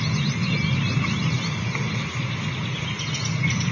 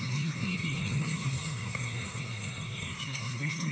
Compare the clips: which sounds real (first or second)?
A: first